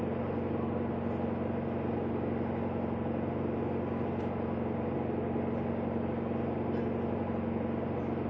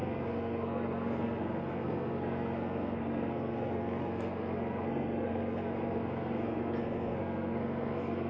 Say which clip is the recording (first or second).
first